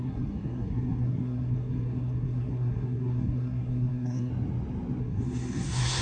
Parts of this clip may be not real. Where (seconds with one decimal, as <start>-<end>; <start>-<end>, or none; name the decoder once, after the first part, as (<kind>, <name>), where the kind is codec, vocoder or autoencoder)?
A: 0.0-4.3 (codec, SNAC); 5.0-6.0